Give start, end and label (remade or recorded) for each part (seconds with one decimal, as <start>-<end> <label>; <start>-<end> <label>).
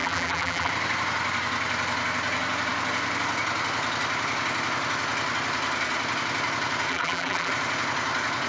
0.0-0.7 remade; 0.7-6.9 recorded; 6.9-7.5 remade; 7.5-8.5 recorded